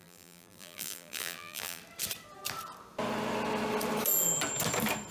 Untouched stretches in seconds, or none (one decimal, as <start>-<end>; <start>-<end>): 1.8-5.1

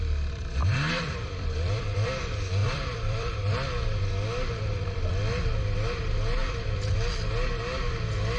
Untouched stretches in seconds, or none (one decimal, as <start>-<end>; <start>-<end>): 0.0-0.6; 2.1-2.6; 5.1-6.4; 6.9-8.4

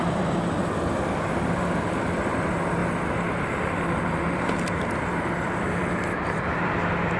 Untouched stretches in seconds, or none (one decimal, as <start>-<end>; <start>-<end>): 2.8-3.4

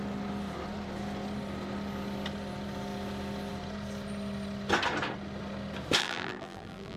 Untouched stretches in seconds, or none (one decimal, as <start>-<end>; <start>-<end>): 0.0-6.0

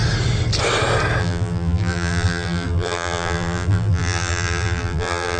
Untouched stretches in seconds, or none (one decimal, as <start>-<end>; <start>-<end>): 0.0-1.2

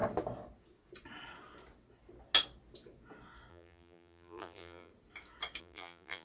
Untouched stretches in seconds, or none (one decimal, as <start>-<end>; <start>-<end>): 0.0-3.5; 4.9-5.6

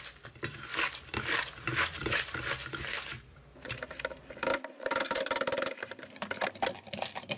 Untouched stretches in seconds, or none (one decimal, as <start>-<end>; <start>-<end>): 0.0-2.0; 6.4-7.4

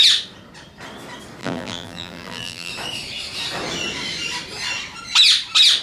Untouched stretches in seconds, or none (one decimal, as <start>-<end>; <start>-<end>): 0.0-1.4; 2.7-5.8